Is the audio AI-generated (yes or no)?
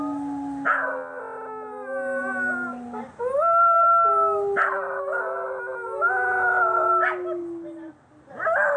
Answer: no